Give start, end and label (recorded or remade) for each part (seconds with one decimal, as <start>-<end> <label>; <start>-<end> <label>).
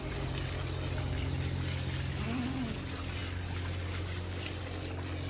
0.0-5.3 recorded